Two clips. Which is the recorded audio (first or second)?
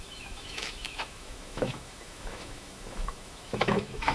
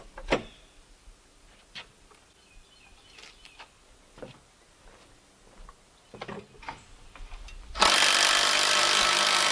second